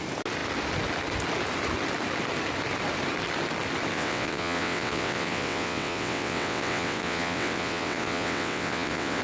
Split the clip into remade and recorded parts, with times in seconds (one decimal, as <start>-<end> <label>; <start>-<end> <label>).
0.0-3.9 recorded; 3.9-9.2 remade